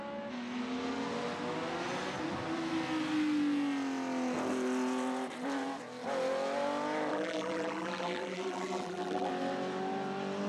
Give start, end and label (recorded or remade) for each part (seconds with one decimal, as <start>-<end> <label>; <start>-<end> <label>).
0.0-7.1 recorded; 7.1-9.3 remade; 9.3-10.5 recorded